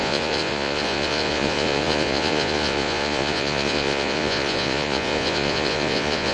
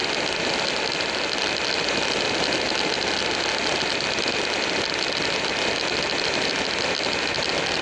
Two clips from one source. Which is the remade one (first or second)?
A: first